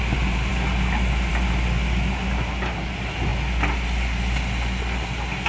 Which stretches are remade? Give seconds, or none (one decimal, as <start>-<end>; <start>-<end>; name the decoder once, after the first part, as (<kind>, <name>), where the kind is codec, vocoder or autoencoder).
none